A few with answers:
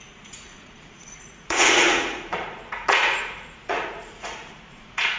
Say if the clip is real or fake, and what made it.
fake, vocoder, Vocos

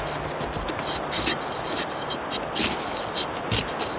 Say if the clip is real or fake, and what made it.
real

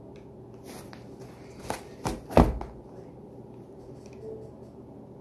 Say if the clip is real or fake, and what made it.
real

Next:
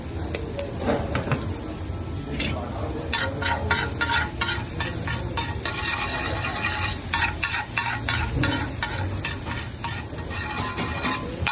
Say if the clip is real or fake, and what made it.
real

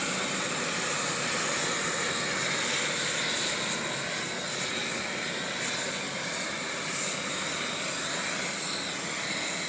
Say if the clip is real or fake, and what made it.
real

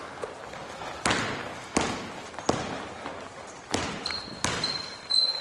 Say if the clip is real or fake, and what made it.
real